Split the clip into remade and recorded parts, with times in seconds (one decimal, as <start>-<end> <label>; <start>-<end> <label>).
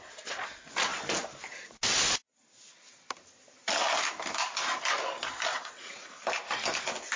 0.0-5.5 recorded; 5.5-6.1 remade; 6.1-7.2 recorded